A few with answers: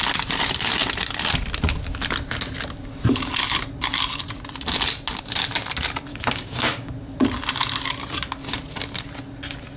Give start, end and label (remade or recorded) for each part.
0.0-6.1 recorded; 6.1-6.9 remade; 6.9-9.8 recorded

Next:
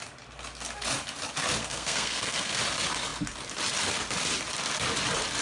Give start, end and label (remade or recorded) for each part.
0.0-1.6 recorded; 1.6-2.6 remade; 2.6-5.4 recorded

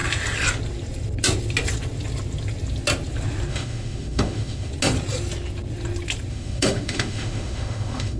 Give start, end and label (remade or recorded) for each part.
0.0-3.5 recorded; 3.5-4.7 remade; 4.7-6.3 recorded; 6.3-8.2 remade

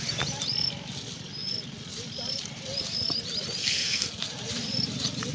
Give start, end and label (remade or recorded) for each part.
0.0-3.6 recorded; 3.6-4.1 remade; 4.1-5.3 recorded

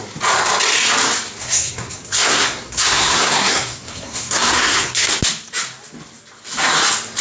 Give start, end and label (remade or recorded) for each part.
0.0-1.4 recorded; 1.4-5.1 remade; 5.1-7.2 recorded

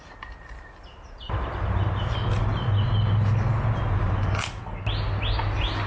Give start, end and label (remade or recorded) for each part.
0.0-5.9 recorded